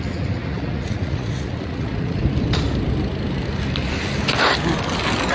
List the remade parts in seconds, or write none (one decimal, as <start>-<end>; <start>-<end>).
0.0-2.2